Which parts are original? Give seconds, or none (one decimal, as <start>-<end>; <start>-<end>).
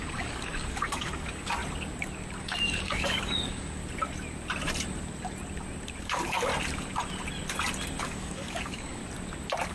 1.6-2.4; 3.8-6.0; 6.5-8.0; 9.0-9.7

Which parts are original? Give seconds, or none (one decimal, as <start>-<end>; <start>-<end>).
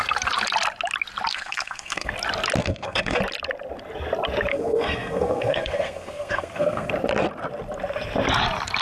0.0-1.3; 2.1-2.6; 3.2-4.5; 6.9-8.8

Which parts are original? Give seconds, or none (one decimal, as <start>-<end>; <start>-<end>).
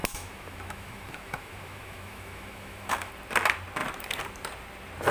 3.1-5.1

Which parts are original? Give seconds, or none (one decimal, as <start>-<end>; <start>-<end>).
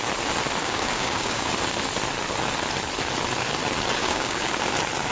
0.0-0.6; 1.5-4.0; 4.5-5.1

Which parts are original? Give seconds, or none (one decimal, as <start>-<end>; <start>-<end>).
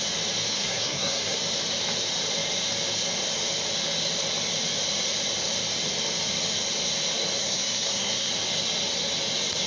0.0-0.5; 1.4-7.4; 8.3-9.7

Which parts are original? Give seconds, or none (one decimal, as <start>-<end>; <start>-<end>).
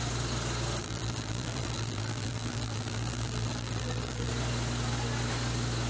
0.0-0.8; 4.3-5.9